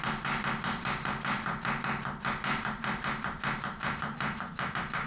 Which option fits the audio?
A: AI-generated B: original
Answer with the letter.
A